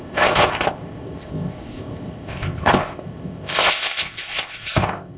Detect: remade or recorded remade